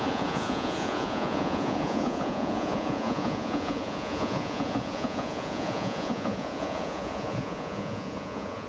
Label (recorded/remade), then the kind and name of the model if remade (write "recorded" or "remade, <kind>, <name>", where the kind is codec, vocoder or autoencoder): remade, vocoder, Vocos